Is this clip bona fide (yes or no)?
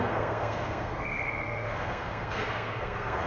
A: no